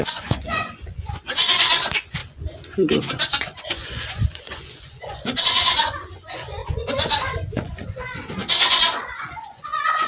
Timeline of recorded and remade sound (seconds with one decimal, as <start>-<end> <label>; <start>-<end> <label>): 0.0-10.1 remade